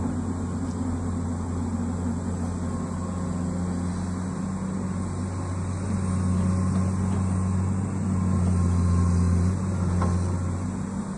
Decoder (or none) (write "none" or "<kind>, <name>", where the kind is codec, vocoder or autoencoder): none